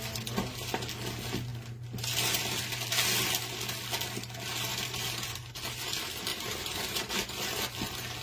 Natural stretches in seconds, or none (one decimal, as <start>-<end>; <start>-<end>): 0.0-4.7; 5.3-6.3; 7.1-8.2